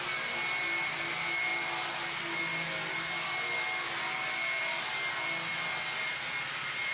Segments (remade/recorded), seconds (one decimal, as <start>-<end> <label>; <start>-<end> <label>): 0.0-6.9 recorded